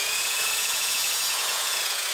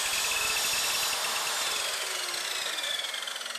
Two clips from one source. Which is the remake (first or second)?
first